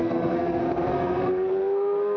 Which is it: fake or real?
fake